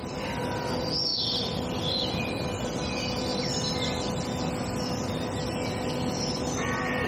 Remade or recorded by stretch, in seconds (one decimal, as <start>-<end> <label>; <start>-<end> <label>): 0.0-7.1 recorded